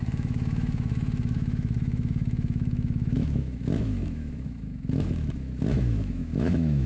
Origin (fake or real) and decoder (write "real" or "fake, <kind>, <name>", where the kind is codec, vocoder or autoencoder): fake, autoencoder, DAC-VAE